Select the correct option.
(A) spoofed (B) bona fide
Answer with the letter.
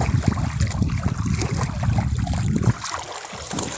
B